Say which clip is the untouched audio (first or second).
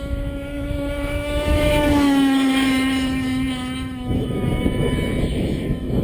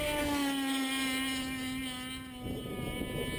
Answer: second